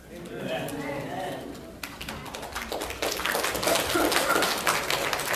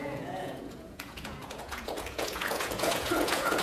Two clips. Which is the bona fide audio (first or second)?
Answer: first